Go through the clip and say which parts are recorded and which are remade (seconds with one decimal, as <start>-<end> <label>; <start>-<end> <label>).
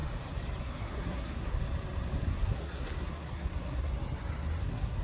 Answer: 0.0-0.6 recorded; 0.6-1.6 remade; 1.6-2.3 recorded; 2.3-3.9 remade; 3.9-4.6 recorded; 4.6-5.0 remade